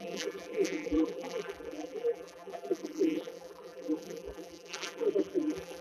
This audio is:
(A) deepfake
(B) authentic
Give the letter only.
A